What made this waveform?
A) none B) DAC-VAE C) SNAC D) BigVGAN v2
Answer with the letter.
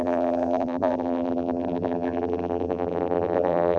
D